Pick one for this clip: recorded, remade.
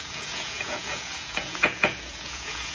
remade